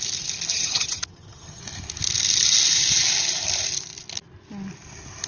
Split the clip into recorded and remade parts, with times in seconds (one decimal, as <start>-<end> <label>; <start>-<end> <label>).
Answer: 0.0-0.5 recorded; 0.5-1.6 remade; 1.6-5.3 recorded